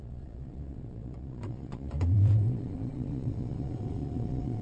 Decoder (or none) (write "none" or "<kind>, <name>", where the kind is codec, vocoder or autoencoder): vocoder, Vocos